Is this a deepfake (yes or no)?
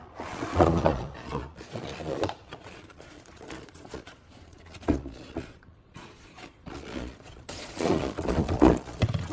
yes